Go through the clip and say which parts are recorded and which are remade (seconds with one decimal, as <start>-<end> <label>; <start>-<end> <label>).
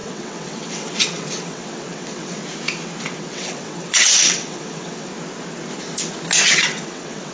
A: 0.0-2.4 remade; 2.4-3.0 recorded; 3.0-5.1 remade; 5.1-6.5 recorded; 6.5-7.3 remade